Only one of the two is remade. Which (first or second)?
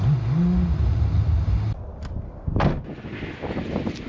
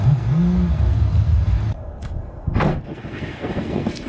second